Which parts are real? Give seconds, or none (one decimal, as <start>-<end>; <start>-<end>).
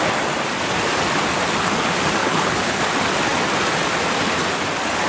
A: 0.0-2.2; 2.8-5.1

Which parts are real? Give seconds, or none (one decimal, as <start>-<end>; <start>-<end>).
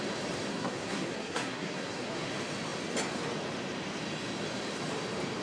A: 0.0-0.5; 2.3-5.4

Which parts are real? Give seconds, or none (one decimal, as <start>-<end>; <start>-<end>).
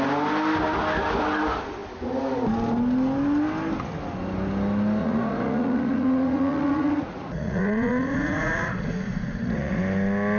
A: 0.0-5.0; 9.8-10.4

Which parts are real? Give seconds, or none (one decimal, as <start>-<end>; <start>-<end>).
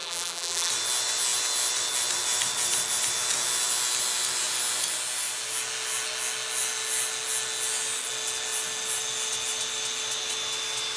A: 0.7-11.0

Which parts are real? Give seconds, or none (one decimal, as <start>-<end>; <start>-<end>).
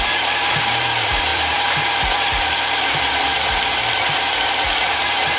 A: 0.0-1.3; 3.9-5.4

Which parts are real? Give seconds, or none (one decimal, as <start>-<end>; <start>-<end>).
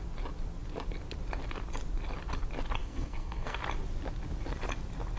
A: 0.0-2.8; 3.6-5.2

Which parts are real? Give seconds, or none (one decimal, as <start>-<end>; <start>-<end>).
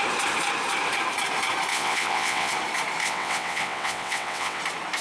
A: 0.0-1.7; 2.5-3.0; 4.6-5.0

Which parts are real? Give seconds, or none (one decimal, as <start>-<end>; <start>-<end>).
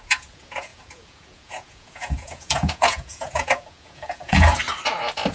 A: 4.6-5.3